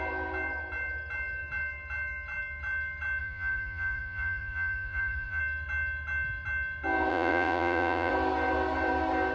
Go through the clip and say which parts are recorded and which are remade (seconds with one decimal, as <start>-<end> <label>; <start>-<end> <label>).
0.0-3.2 recorded; 3.2-5.4 remade; 5.4-7.1 recorded; 7.1-8.1 remade; 8.1-9.3 recorded